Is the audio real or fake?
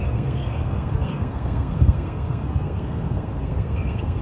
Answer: fake